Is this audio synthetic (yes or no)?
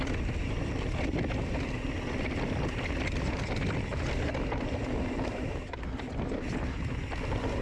no